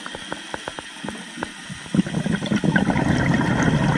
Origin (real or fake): real